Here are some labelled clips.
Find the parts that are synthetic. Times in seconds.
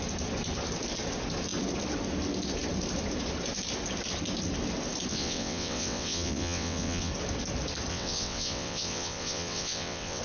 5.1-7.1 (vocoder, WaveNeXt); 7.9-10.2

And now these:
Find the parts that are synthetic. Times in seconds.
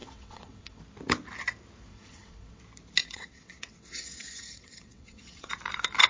0.0-0.8 (vocoder, WaveNeXt); 1.9-2.6; 3.0-5.5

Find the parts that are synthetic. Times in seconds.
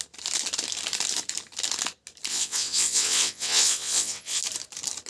2.3-4.4 (vocoder, WaveNeXt)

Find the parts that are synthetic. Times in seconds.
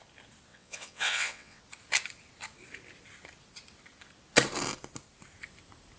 0.5-1.6 (vocoder, WaveNeXt)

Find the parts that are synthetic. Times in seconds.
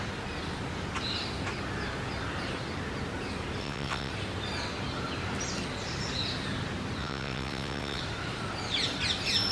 3.6-4.1 (vocoder, WaveNeXt); 7.0-8.0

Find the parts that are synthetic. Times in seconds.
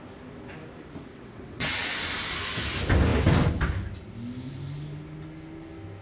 1.1-2.0 (vocoder, WaveNeXt)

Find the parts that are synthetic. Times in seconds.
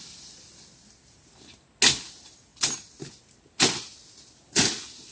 none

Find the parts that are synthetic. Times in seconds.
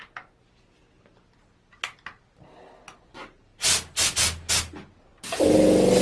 none